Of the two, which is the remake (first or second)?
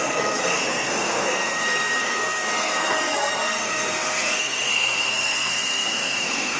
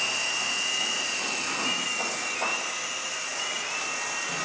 first